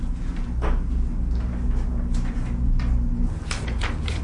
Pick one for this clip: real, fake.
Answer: real